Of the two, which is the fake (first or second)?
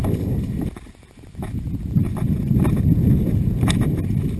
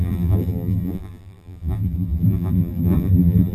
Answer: second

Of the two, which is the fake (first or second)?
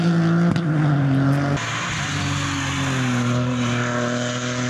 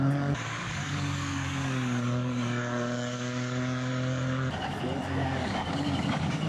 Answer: second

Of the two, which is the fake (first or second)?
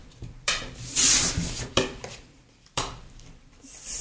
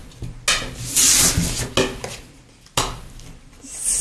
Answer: first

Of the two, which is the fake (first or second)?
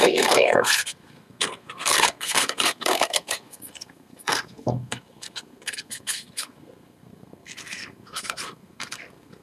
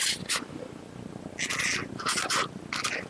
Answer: first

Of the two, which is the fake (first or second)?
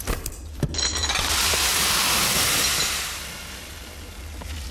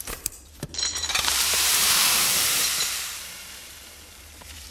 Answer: second